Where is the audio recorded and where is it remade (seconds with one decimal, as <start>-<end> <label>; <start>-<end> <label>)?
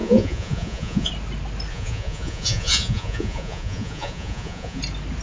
0.0-1.1 remade; 1.1-1.7 recorded; 1.7-4.8 remade; 4.8-5.2 recorded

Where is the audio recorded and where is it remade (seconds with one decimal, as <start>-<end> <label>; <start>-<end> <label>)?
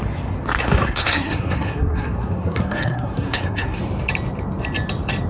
0.0-0.6 recorded; 0.6-3.8 remade; 3.8-5.3 recorded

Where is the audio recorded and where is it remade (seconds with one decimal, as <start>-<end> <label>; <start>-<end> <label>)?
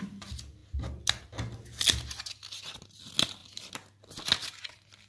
0.0-5.1 recorded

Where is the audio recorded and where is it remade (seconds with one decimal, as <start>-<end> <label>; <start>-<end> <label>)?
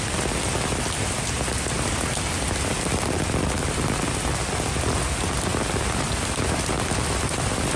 0.0-7.8 recorded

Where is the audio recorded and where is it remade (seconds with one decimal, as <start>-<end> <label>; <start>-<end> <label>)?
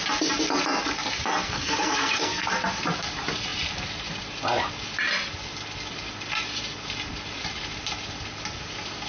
0.0-1.4 recorded; 1.4-2.5 remade; 2.5-9.1 recorded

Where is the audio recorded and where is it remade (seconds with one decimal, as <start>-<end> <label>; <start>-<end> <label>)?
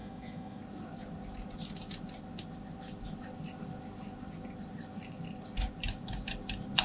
0.0-0.6 remade; 0.6-6.8 recorded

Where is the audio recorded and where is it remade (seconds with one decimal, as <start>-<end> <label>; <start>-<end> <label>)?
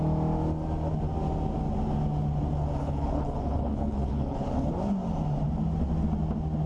0.0-2.8 recorded; 2.8-4.7 remade; 4.7-6.7 recorded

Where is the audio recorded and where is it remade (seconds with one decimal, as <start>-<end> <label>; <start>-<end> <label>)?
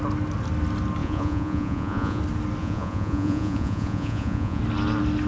0.0-1.0 recorded; 1.0-2.2 remade; 2.2-2.6 recorded; 2.6-4.6 remade; 4.6-5.3 recorded